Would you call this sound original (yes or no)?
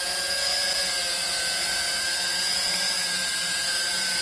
no